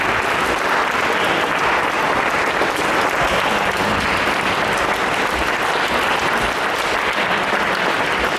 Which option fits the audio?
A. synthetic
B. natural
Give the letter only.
B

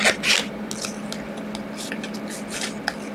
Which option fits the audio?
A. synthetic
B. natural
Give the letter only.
B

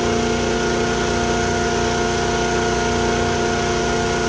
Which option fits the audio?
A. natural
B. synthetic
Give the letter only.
A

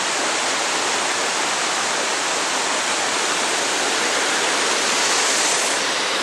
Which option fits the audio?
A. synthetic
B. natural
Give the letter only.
A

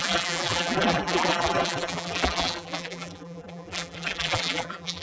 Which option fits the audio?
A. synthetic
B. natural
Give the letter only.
A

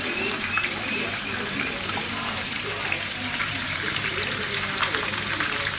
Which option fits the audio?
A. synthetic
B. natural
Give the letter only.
A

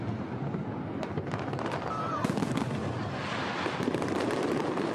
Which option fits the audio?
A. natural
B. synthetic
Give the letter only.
A